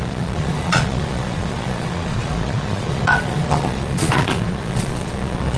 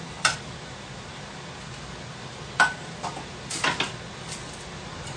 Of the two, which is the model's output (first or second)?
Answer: first